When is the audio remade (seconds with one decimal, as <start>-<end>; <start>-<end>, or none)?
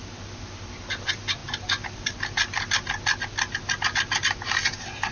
none